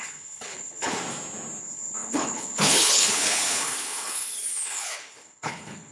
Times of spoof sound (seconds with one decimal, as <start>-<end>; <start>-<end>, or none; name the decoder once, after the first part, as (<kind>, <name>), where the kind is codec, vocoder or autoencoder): 0.0-1.0 (codec, HILCodec); 1.6-5.9